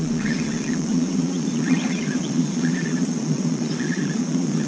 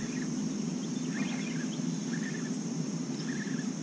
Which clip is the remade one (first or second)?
first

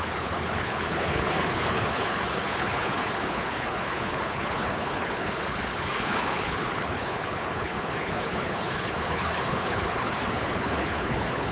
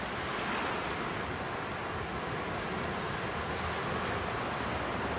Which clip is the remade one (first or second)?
first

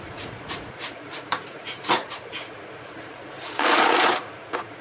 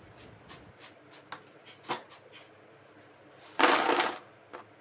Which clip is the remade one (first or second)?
first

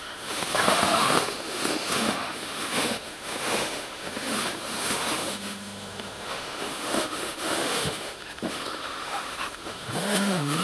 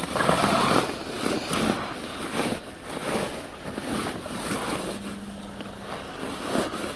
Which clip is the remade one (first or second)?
first